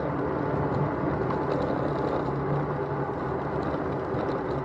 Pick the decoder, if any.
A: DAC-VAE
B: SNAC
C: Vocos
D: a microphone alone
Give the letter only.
D